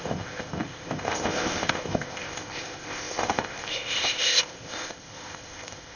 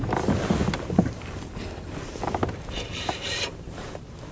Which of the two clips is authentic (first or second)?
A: second